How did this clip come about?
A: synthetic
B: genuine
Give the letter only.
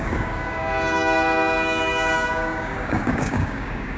A